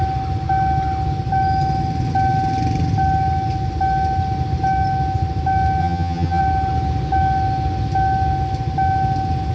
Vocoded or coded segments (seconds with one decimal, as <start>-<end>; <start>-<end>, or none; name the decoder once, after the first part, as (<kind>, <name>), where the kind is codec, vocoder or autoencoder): 5.8-6.4 (vocoder, HiFi-GAN)